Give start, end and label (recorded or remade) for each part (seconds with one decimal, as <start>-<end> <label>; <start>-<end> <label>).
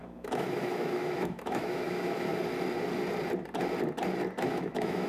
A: 0.0-2.3 remade; 2.3-4.4 recorded; 4.4-5.1 remade